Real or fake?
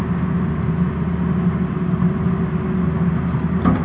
real